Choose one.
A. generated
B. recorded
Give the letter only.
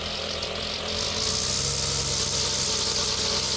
B